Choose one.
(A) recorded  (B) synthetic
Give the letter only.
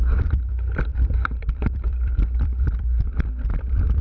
B